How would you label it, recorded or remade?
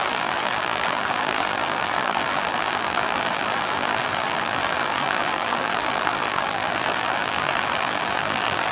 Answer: remade